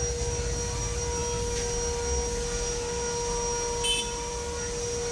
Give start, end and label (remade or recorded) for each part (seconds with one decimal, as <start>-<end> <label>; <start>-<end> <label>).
0.0-5.1 recorded